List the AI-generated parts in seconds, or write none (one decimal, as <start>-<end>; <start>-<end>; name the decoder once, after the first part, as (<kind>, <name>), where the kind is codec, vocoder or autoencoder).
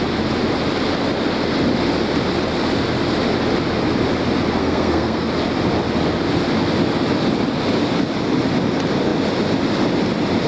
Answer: 4.6-5.3 (codec, SNAC)